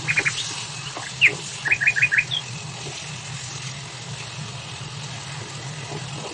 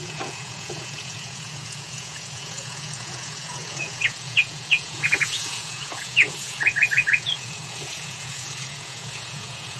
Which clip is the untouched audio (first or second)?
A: first